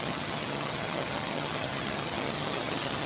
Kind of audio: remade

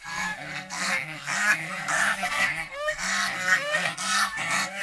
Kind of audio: remade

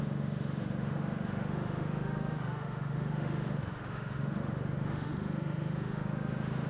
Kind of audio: remade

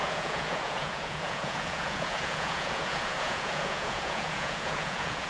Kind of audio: remade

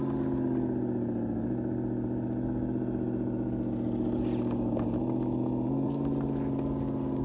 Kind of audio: recorded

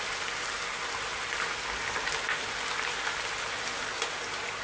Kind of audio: recorded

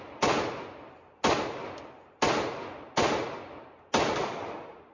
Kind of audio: recorded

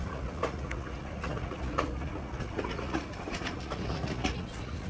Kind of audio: remade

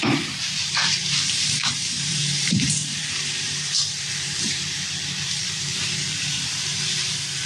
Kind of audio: remade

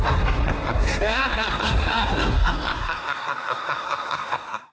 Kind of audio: remade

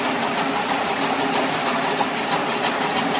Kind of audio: recorded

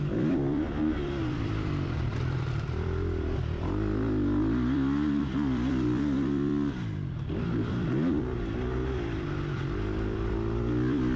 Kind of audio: remade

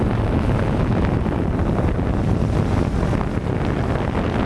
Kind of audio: recorded